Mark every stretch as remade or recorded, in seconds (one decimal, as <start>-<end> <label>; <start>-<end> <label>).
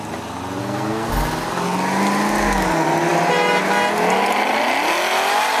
0.0-0.6 recorded; 0.6-1.1 remade; 1.1-5.6 recorded